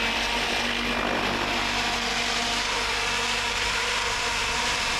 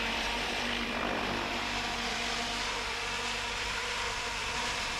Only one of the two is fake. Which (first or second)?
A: second